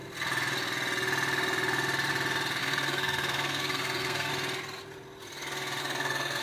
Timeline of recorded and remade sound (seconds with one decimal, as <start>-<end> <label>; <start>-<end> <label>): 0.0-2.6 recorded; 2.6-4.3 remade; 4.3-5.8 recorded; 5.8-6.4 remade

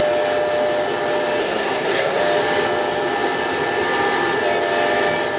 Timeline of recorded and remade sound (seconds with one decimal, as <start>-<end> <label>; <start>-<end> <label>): 0.0-1.4 recorded; 1.4-2.2 remade; 2.2-5.4 recorded

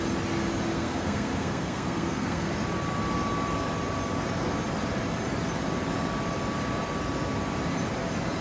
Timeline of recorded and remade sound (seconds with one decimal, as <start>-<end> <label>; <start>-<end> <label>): 0.0-0.7 recorded; 0.7-2.5 remade; 2.5-8.4 recorded

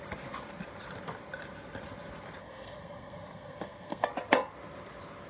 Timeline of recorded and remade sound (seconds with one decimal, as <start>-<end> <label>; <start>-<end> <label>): 0.0-2.4 recorded; 2.4-4.1 remade; 4.1-5.3 recorded

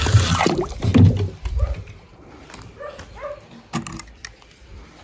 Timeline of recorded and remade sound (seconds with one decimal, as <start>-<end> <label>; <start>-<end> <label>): 0.0-5.0 recorded

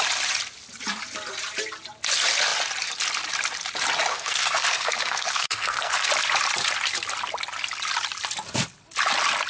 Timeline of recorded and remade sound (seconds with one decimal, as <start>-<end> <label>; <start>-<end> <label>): 0.0-4.1 recorded; 4.1-6.1 remade; 6.1-9.5 recorded

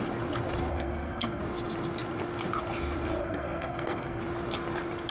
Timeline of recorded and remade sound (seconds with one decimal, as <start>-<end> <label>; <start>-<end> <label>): 0.0-0.7 recorded; 0.7-1.4 remade; 1.4-3.2 recorded; 3.2-4.2 remade; 4.2-5.1 recorded

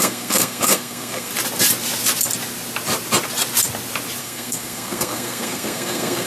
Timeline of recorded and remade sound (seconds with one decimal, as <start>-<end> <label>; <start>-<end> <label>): 0.0-1.3 remade; 1.3-4.2 recorded; 4.2-6.3 remade